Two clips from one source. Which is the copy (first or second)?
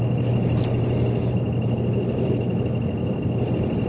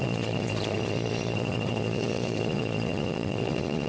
second